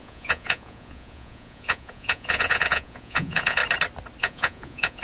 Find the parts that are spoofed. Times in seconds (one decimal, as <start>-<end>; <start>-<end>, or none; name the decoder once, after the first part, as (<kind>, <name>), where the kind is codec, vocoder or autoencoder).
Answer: 0.0-3.6 (vocoder, Vocos); 4.2-5.0